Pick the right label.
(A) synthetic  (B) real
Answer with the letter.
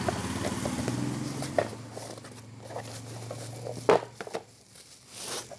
B